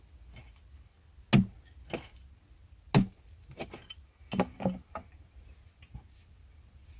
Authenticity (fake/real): real